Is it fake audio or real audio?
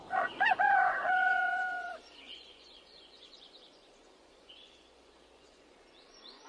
fake